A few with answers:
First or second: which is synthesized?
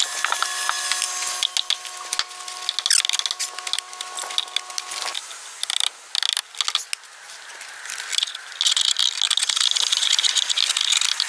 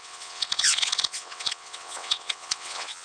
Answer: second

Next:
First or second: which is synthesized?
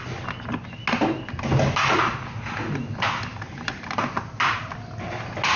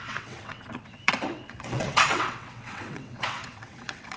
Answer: second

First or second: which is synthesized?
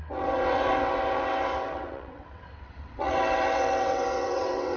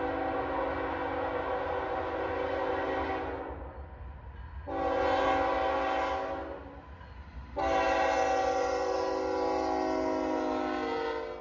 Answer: first